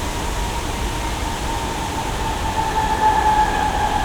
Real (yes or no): yes